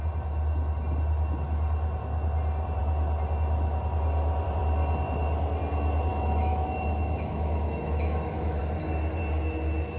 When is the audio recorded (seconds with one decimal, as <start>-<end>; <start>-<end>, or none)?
0.0-6.1; 8.6-10.0